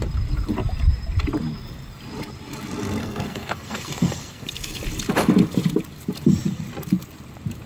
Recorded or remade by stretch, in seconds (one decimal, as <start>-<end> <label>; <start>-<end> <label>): 0.0-3.0 recorded; 3.0-4.8 remade; 4.8-7.7 recorded